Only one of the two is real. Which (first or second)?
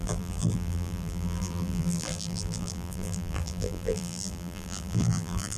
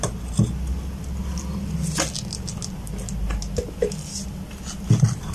second